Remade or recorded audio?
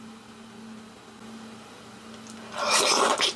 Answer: recorded